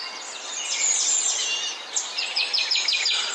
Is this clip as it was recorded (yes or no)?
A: yes